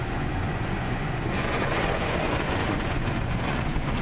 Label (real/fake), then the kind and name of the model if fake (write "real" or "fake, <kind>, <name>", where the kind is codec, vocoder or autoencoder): fake, vocoder, Vocos